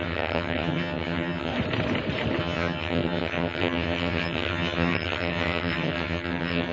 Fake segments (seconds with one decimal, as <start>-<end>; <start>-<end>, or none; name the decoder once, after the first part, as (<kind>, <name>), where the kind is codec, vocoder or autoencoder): 0.0-1.5 (vocoder, HiFi-GAN); 2.4-6.7